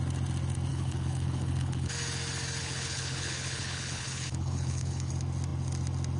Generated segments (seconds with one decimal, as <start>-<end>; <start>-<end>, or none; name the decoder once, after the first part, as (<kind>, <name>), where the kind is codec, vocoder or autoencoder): 0.7-1.9 (codec, HILCodec); 2.6-5.1